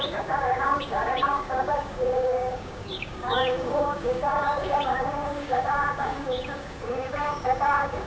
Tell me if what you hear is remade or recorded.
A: remade